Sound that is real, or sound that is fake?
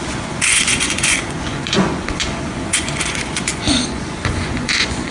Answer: fake